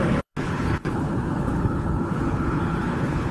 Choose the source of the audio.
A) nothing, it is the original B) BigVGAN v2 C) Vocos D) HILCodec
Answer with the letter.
D